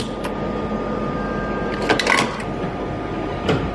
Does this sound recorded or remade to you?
recorded